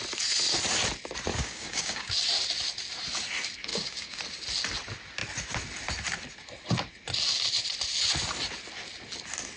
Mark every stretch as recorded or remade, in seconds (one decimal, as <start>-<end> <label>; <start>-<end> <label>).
0.0-1.3 recorded; 1.3-2.1 remade; 2.1-3.7 recorded; 3.7-4.2 remade; 4.2-9.6 recorded